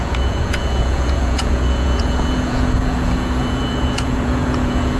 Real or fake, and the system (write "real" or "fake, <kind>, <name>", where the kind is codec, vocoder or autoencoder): fake, vocoder, Vocos